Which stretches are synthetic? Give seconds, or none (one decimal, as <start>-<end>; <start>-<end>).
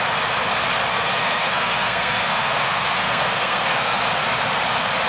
0.9-4.0